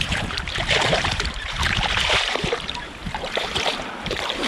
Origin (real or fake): fake